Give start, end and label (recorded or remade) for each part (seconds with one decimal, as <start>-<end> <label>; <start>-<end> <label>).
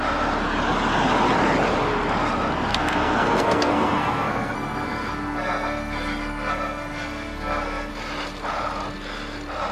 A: 0.0-2.7 recorded; 2.7-7.9 remade; 7.9-9.7 recorded